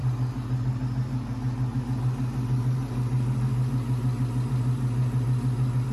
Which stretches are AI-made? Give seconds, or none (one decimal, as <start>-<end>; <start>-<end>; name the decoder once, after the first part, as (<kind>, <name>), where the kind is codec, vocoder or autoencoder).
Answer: none